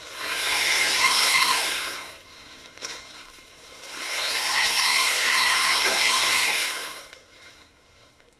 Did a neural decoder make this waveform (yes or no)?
yes